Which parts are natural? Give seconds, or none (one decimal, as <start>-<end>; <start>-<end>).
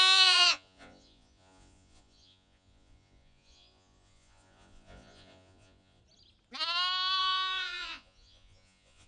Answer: 6.0-7.2